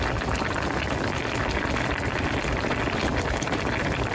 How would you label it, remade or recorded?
recorded